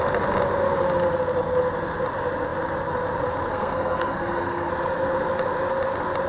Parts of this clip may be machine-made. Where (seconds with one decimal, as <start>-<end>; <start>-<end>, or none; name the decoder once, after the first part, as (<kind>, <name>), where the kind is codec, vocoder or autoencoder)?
3.5-4.7 (codec, SNAC)